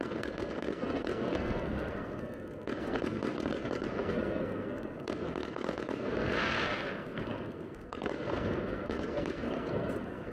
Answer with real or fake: fake